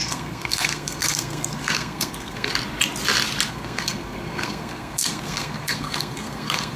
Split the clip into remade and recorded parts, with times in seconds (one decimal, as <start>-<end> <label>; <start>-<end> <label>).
0.0-2.5 remade; 2.5-3.5 recorded; 3.5-6.8 remade